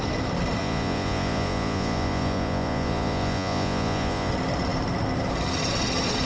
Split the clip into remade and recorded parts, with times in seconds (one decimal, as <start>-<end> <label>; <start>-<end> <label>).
0.0-0.6 recorded; 0.6-4.3 remade; 4.3-6.2 recorded